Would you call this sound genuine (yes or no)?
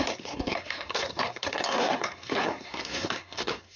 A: no